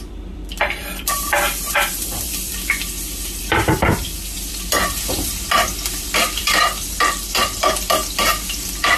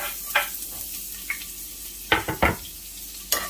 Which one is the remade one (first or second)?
first